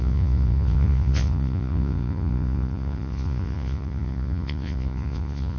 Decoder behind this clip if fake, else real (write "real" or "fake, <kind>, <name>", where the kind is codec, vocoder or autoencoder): fake, vocoder, Vocos